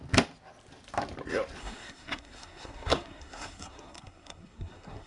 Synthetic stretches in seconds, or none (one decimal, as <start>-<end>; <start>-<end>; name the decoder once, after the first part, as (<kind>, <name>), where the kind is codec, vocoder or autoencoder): 1.6-5.1 (codec, SNAC)